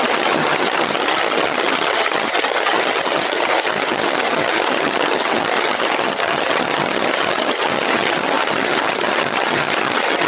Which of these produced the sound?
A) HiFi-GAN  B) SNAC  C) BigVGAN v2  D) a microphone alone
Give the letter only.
A